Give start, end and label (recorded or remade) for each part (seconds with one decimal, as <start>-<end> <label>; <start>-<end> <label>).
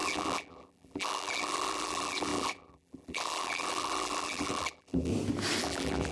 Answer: 0.0-5.1 remade; 5.1-5.6 recorded; 5.6-6.1 remade